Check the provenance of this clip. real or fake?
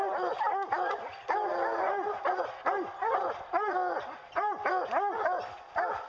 real